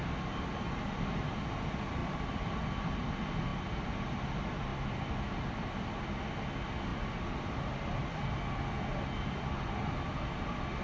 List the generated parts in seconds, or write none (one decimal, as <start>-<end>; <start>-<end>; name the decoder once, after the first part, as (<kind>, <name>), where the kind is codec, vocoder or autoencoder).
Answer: 2.0-2.8 (vocoder, BigVGAN v2)